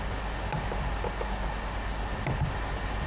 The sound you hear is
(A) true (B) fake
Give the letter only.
A